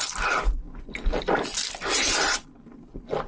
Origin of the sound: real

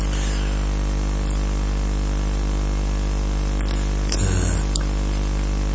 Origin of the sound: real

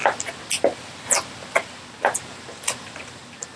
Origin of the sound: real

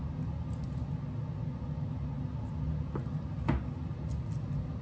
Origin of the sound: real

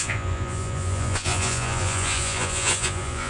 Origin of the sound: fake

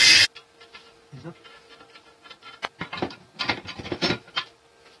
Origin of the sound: real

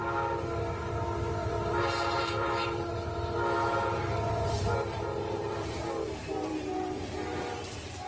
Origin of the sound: fake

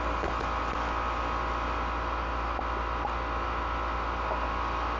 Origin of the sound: real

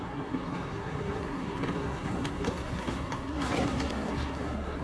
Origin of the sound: fake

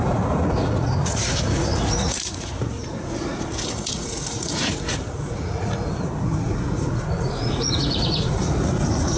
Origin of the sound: fake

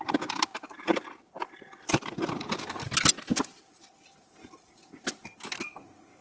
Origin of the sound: real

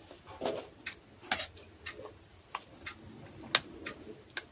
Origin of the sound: real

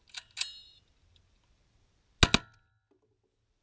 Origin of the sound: real